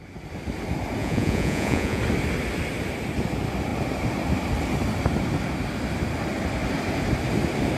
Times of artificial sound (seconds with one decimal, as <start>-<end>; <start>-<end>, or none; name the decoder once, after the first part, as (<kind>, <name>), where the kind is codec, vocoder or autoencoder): 1.0-2.0 (vocoder, Vocos)

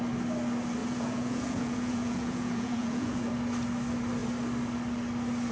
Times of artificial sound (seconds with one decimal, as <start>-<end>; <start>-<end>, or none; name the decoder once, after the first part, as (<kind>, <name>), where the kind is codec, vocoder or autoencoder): 0.8-3.3 (vocoder, Vocos)

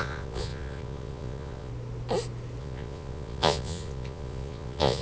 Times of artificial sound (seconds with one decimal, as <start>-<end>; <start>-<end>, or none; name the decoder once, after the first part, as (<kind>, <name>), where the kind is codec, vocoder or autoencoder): 0.0-1.7 (vocoder, Vocos); 2.6-5.0

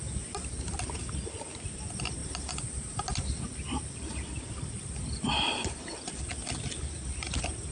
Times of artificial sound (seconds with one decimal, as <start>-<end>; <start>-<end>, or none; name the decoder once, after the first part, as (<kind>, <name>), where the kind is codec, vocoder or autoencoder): none

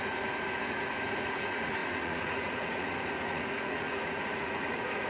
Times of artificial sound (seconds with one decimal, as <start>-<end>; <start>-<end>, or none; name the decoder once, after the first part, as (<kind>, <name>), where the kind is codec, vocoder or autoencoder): 0.0-5.1 (vocoder, Vocos)